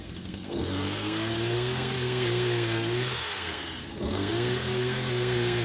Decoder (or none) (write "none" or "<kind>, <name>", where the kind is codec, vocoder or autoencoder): codec, SNAC